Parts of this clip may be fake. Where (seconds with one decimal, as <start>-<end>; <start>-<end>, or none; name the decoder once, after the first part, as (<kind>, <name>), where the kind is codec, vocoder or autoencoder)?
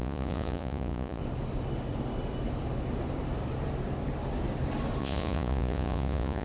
0.0-1.2 (vocoder, Vocos); 5.0-6.4